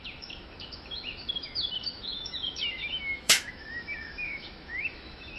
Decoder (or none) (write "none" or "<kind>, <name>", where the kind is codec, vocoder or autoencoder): autoencoder, DAC-VAE